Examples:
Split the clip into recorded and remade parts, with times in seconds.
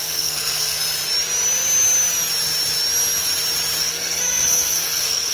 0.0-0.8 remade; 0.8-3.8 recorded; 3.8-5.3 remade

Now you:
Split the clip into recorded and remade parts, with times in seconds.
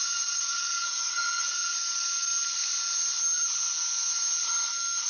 0.0-1.6 remade; 1.6-5.1 recorded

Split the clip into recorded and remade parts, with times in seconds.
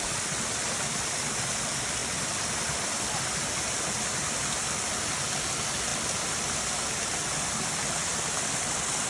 0.0-2.0 recorded; 2.0-3.2 remade; 3.2-5.9 recorded; 5.9-6.7 remade; 6.7-8.0 recorded; 8.0-9.1 remade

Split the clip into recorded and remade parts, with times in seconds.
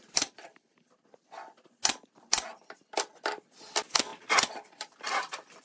0.0-5.6 recorded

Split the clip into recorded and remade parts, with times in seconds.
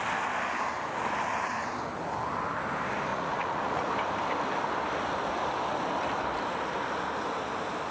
0.0-3.1 recorded; 3.1-3.9 remade; 3.9-7.9 recorded